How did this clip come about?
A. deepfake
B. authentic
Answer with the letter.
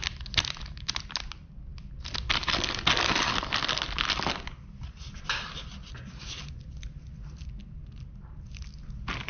B